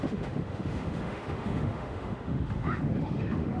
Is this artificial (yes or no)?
yes